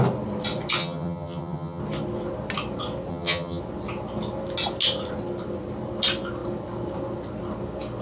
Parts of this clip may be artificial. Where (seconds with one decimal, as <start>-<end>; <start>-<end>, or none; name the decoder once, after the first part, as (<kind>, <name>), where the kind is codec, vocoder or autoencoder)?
0.8-1.8 (vocoder, HiFi-GAN); 3.1-3.6